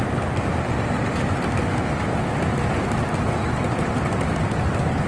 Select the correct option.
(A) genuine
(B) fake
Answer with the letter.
A